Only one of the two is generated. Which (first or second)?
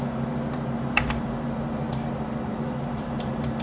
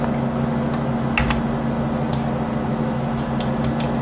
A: first